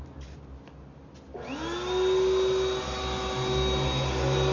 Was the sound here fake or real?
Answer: real